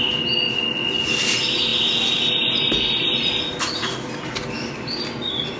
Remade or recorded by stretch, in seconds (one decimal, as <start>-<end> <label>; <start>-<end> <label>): 0.0-5.6 recorded